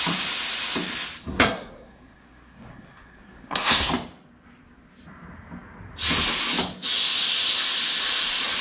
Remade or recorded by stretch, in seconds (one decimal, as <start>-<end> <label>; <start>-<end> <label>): 0.0-1.2 recorded; 1.2-3.9 remade; 3.9-8.6 recorded